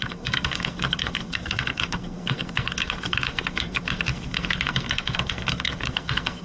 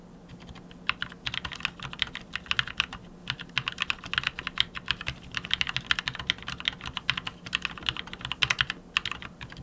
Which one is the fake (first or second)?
first